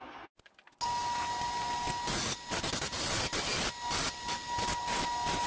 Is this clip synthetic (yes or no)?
no